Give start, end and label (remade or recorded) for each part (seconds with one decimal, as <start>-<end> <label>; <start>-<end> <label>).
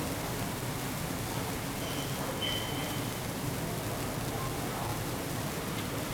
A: 0.0-2.8 recorded; 2.8-3.7 remade; 3.7-4.9 recorded; 4.9-6.1 remade